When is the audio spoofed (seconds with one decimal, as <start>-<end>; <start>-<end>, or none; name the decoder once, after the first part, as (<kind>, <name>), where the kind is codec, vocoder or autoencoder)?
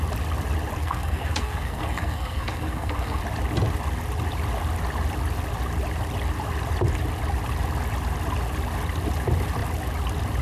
0.8-3.2 (codec, SNAC)